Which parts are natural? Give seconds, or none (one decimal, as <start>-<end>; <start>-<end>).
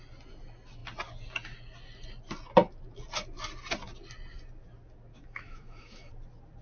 0.0-5.1; 6.1-6.6